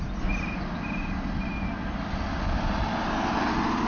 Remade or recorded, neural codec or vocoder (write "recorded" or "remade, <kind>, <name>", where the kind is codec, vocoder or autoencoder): recorded